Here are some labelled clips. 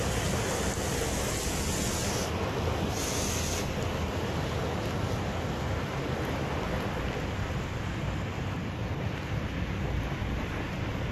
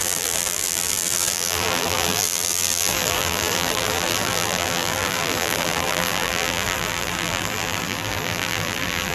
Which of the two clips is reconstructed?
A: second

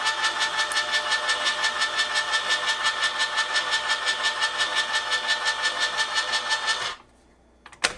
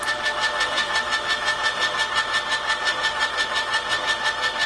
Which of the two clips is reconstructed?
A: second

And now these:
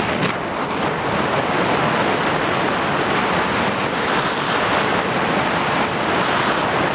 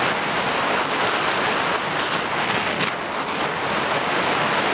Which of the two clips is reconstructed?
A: first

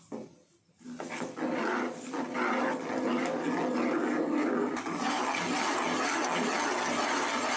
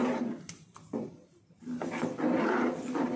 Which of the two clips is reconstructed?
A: second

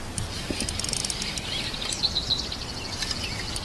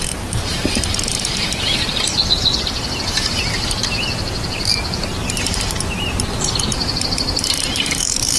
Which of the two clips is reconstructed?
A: second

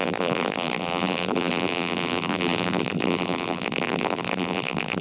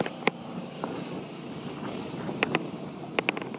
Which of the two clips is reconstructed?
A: first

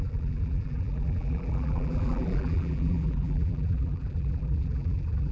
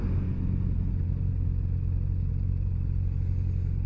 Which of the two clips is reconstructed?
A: first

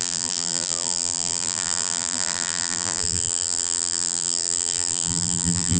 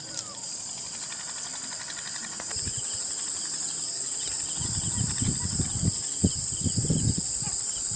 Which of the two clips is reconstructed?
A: first